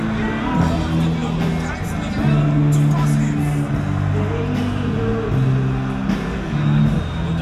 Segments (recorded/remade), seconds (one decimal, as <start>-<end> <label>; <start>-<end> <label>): 0.0-6.3 recorded; 6.3-6.8 remade; 6.8-7.4 recorded